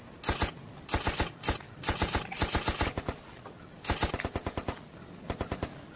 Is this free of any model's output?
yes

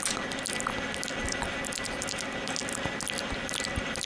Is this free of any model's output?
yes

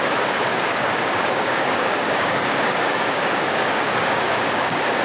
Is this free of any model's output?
no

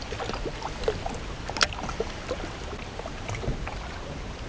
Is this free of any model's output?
yes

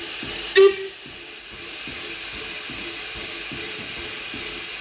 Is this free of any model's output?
yes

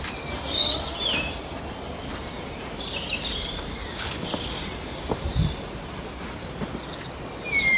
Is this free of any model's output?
yes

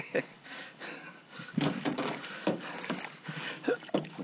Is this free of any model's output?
no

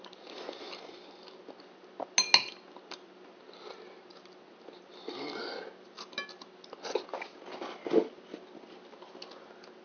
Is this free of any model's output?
yes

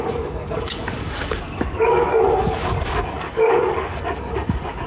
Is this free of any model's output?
no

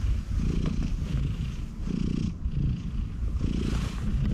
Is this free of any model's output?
yes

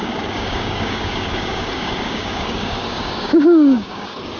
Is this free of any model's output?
no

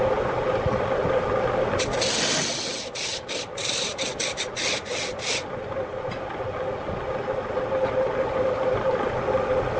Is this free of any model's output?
yes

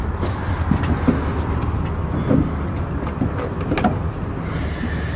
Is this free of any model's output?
yes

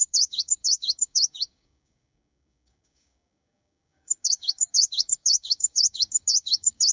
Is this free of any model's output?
no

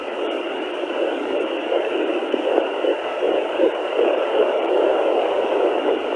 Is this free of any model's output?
no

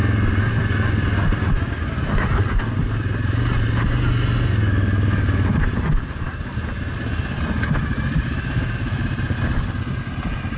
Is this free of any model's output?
yes